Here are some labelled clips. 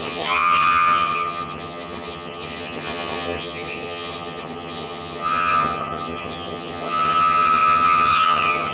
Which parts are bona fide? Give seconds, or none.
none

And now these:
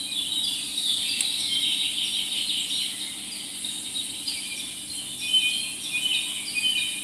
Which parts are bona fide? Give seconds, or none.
0.0-0.7; 2.8-3.5; 4.3-7.0

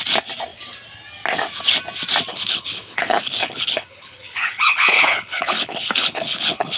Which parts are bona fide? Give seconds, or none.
0.0-2.3